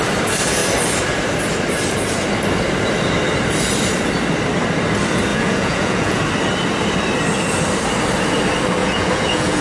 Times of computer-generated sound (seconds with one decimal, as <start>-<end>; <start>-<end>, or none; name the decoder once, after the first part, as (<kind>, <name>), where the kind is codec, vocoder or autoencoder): 5.3-6.2 (vocoder, Vocos); 8.8-9.6